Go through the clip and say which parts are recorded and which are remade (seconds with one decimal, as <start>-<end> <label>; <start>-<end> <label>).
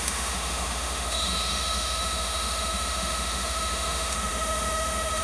0.0-5.2 remade